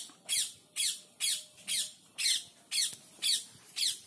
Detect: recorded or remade recorded